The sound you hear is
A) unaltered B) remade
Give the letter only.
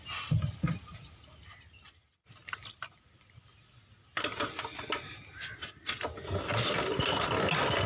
A